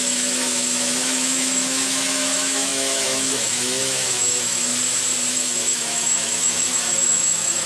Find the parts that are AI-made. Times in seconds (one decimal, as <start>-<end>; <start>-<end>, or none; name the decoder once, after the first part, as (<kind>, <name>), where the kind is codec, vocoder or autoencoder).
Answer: 0.0-4.7 (autoencoder, DAC-VAE); 5.3-7.7